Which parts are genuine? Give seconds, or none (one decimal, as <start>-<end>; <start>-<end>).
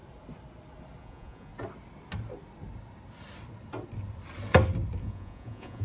0.0-1.0; 1.5-5.0